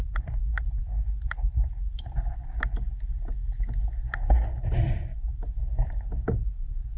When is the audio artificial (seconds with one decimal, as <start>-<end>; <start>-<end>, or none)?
0.5-1.8; 5.1-7.0